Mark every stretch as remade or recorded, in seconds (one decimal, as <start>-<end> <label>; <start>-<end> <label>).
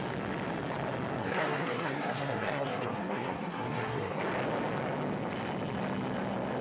0.0-1.2 recorded; 1.2-4.2 remade; 4.2-6.6 recorded